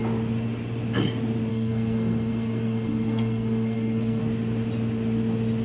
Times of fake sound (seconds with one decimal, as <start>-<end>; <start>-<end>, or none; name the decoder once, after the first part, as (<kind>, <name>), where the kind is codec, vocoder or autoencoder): 1.5-4.2 (codec, SNAC)